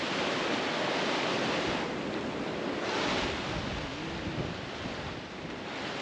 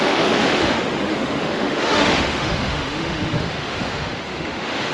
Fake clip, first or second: second